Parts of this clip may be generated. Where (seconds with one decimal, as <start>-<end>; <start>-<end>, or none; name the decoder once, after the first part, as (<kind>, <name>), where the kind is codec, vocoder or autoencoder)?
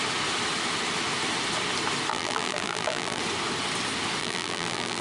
2.1-3.2 (vocoder, BigVGAN v2); 4.2-5.0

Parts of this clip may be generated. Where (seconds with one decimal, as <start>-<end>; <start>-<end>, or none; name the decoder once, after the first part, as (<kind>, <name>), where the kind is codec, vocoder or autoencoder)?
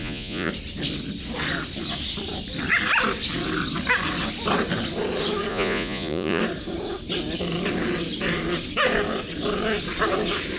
0.0-0.5 (vocoder, Vocos); 5.5-6.4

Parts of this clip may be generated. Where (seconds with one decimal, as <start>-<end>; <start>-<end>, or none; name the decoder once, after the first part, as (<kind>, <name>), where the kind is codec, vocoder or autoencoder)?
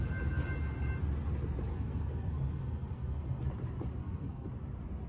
1.7-3.4 (codec, SNAC); 4.0-4.5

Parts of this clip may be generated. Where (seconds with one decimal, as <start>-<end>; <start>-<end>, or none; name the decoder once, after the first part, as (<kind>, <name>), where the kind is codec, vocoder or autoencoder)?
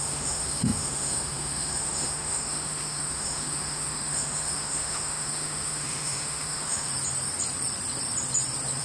0.0-6.9 (autoencoder, DAC-VAE)